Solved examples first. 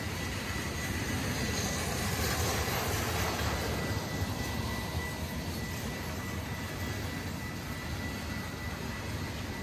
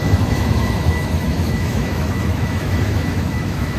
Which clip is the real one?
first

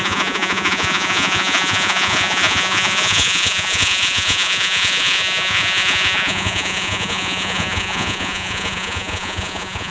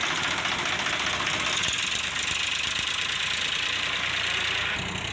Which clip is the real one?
second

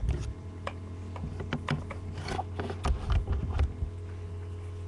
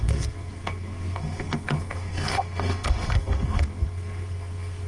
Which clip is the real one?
first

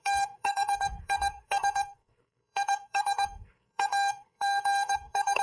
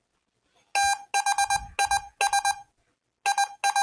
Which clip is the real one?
second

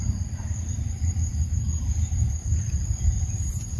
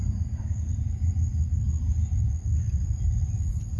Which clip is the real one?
second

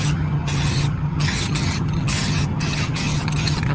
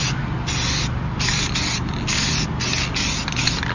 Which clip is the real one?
second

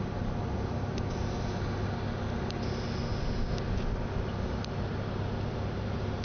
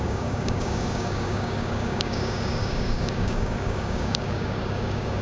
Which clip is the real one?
first